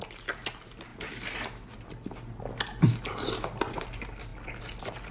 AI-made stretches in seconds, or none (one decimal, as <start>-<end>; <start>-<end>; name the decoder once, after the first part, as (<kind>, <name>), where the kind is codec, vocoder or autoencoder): none